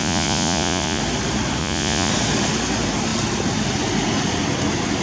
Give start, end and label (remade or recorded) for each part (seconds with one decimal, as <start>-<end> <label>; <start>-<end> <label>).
0.0-1.0 remade; 1.0-1.6 recorded; 1.6-2.1 remade; 2.1-5.0 recorded